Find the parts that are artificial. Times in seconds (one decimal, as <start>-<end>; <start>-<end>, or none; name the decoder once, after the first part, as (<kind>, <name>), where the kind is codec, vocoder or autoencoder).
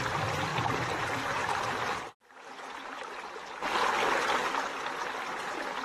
none